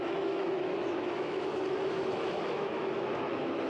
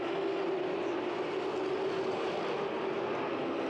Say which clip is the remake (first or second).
first